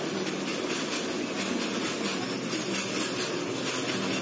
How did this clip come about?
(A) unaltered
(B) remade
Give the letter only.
A